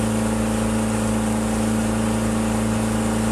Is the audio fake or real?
real